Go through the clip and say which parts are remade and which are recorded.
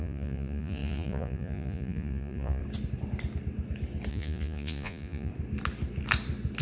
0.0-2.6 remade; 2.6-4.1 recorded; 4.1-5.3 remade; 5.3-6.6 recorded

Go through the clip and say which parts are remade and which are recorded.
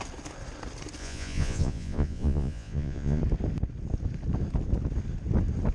0.0-1.0 recorded; 1.0-3.2 remade; 3.2-5.7 recorded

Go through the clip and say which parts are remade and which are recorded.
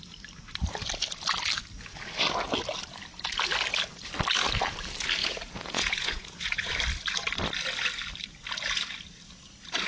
0.0-5.2 recorded; 5.2-6.7 remade; 6.7-9.9 recorded